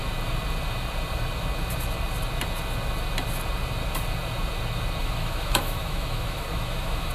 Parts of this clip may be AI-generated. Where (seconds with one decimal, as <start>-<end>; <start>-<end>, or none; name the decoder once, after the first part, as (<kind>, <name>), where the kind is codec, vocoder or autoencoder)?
5.0-7.1 (autoencoder, DAC-VAE)